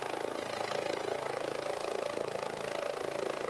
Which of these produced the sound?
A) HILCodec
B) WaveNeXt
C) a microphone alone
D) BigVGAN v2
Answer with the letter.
C